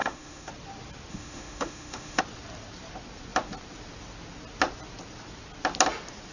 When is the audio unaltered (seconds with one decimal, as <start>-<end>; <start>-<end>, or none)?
0.5-1.1; 2.2-6.3